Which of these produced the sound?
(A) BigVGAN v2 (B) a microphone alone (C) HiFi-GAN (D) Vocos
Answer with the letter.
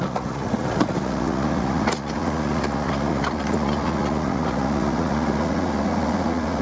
D